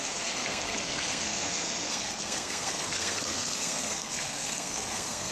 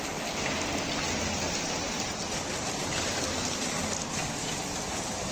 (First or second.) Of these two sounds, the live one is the second